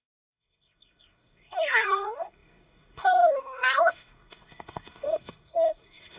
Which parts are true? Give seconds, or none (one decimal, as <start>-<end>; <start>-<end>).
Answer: none